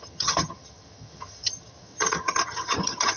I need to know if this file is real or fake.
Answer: fake